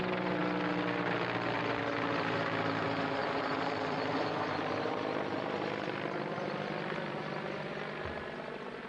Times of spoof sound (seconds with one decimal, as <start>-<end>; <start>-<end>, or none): 3.2-7.7